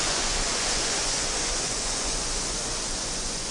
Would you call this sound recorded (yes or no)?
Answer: no